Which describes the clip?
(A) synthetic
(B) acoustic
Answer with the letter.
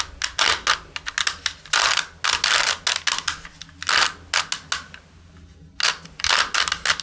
B